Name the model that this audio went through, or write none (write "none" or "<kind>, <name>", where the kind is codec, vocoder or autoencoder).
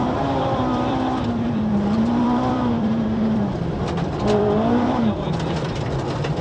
vocoder, BigVGAN v2